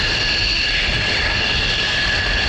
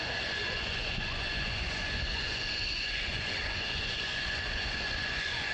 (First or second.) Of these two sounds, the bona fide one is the first